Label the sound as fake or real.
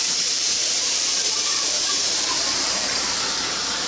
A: fake